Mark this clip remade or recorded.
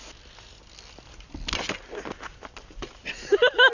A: recorded